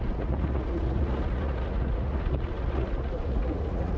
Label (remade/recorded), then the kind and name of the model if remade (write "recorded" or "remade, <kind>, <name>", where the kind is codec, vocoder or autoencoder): remade, vocoder, Vocos